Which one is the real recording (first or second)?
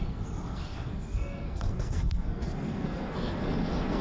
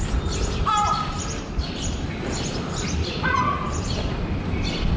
second